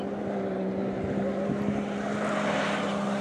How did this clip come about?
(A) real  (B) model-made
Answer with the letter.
A